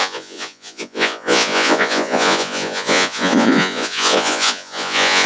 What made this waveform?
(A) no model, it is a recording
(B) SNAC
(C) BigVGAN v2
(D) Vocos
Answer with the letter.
D